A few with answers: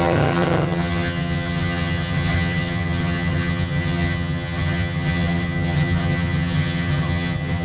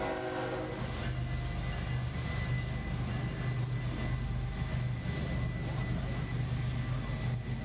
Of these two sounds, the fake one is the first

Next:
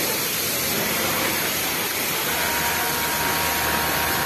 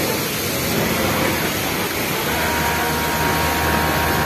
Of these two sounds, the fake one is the first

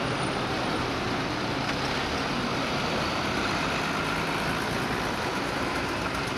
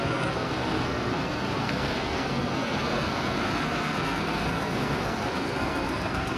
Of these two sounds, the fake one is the second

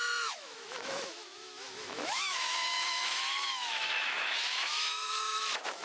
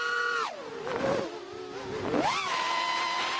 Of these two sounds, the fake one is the first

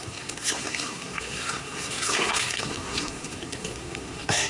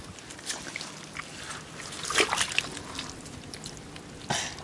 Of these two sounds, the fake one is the first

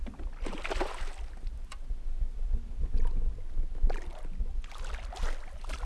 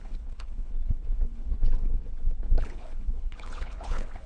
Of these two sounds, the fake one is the second